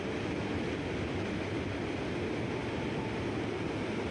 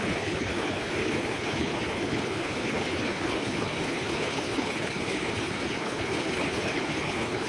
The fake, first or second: second